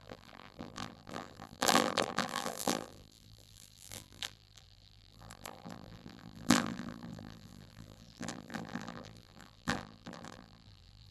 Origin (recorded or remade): remade